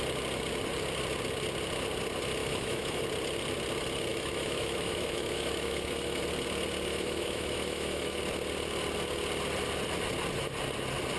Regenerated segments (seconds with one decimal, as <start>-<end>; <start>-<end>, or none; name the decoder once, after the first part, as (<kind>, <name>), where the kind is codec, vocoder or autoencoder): 2.4-3.0 (autoencoder, DAC-VAE); 4.1-6.2; 6.9-8.2